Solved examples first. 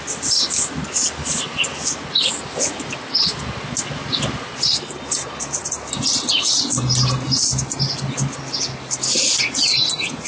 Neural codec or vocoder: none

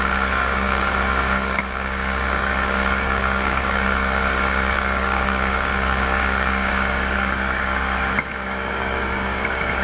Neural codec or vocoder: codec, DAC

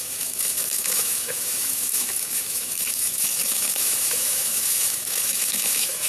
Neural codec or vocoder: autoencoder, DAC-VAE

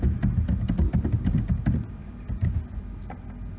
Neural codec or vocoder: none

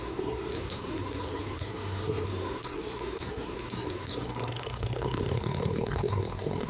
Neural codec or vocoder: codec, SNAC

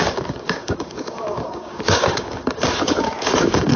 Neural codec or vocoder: codec, DAC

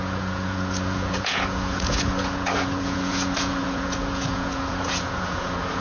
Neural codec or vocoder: vocoder, Vocos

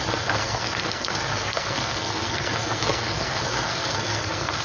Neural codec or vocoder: codec, SNAC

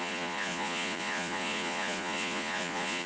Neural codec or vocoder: vocoder, Vocos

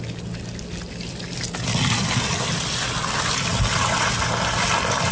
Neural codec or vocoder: none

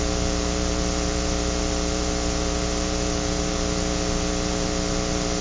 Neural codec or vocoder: none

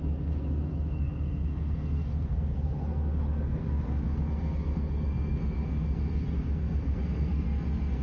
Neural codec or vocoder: codec, SNAC